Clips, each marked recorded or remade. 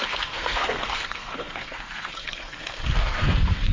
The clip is remade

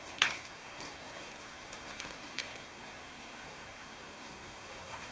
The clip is remade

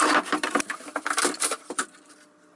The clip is recorded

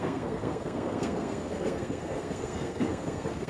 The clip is remade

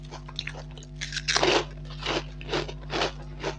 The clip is recorded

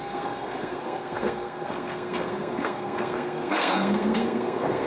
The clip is remade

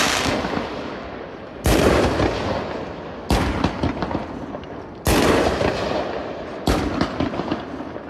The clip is recorded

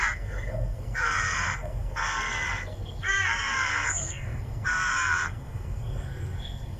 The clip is remade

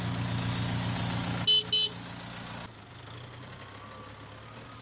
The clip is recorded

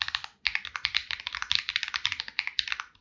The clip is recorded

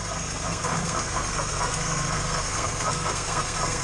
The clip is remade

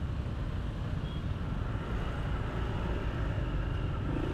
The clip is recorded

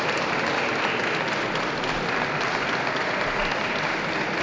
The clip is recorded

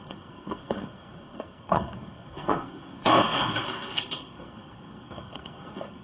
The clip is remade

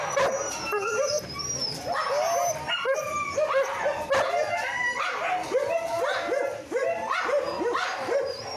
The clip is recorded